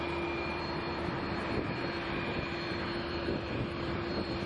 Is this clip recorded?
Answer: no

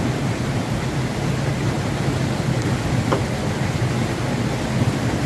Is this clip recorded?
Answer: yes